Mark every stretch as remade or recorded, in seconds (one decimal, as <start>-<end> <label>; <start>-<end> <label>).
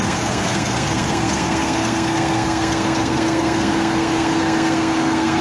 0.0-5.4 remade